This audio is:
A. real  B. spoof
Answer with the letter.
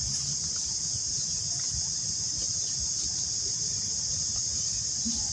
A